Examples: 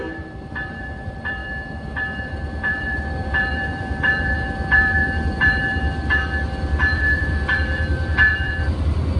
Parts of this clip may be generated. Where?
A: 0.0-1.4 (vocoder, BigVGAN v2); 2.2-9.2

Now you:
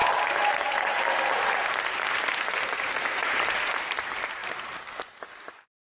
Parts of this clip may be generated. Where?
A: 0.0-5.9 (vocoder, BigVGAN v2)

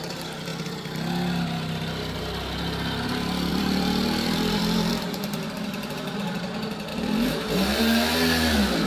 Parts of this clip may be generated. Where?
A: 3.5-4.9 (vocoder, BigVGAN v2); 6.9-7.8

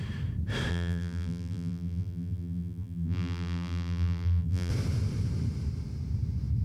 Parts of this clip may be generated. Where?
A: 0.7-4.7 (vocoder, BigVGAN v2)

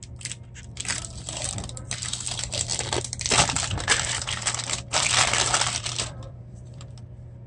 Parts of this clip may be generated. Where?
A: 0.9-1.9 (vocoder, BigVGAN v2); 2.7-6.9

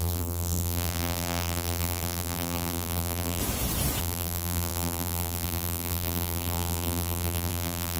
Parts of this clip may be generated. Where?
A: 0.0-3.4 (vocoder, BigVGAN v2); 4.0-8.0